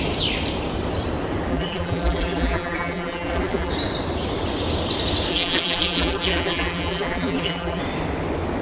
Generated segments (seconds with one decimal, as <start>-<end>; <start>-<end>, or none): 1.5-3.7; 5.3-7.8